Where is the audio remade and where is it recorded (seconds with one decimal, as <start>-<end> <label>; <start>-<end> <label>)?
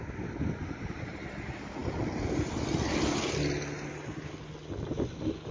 0.0-5.5 recorded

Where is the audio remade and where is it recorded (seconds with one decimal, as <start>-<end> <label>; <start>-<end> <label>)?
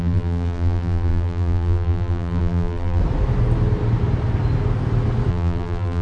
0.0-3.0 remade; 3.0-5.3 recorded; 5.3-6.0 remade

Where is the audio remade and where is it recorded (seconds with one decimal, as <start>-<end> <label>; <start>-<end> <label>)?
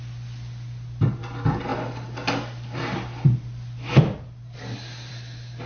0.0-5.7 recorded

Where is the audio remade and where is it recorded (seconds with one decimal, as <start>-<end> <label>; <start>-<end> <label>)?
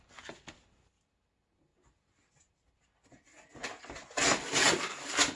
0.0-5.4 recorded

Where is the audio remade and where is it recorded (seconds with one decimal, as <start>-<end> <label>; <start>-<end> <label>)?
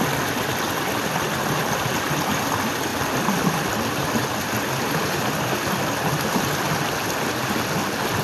0.0-8.2 recorded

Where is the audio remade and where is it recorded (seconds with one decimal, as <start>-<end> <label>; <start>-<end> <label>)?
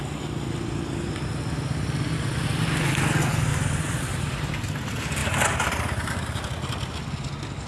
0.0-3.5 recorded; 3.5-4.5 remade; 4.5-5.2 recorded; 5.2-6.4 remade; 6.4-7.7 recorded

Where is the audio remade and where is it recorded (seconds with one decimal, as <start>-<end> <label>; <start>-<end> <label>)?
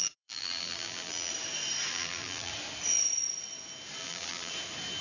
0.0-1.3 remade; 1.3-1.9 recorded; 1.9-2.5 remade; 2.5-4.0 recorded; 4.0-4.5 remade; 4.5-5.0 recorded